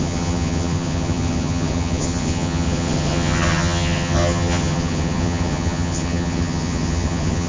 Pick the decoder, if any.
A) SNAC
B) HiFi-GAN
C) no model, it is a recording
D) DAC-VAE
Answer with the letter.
B